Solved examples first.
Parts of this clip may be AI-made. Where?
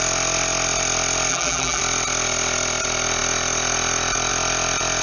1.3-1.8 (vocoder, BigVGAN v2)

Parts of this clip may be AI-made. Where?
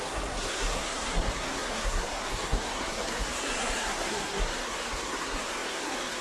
0.0-6.2 (codec, SNAC)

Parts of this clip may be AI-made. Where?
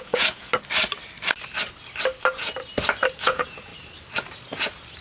0.0-0.5 (vocoder, Vocos); 3.2-3.7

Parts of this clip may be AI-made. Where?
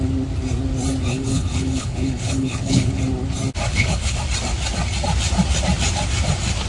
1.1-3.0 (codec, HILCodec); 3.7-4.2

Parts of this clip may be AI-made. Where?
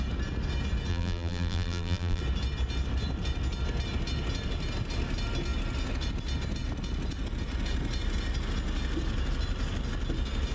0.9-2.2 (vocoder, BigVGAN v2)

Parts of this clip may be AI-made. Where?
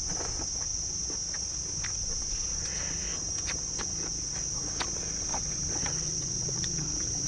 5.3-7.3 (vocoder, WaveNeXt)